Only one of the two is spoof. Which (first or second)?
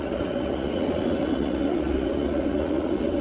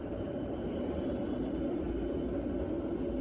first